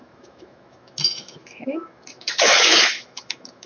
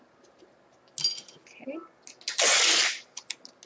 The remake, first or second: first